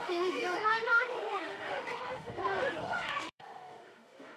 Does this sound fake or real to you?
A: fake